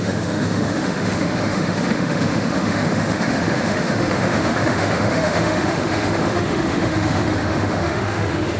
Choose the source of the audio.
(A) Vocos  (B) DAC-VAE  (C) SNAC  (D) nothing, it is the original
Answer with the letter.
B